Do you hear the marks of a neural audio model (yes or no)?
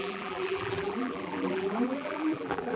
yes